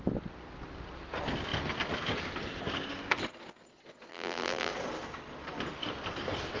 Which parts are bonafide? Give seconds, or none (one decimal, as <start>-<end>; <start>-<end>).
0.0-4.1; 4.7-6.6